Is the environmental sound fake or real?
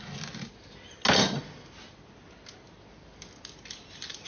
real